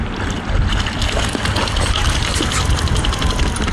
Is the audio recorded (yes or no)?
yes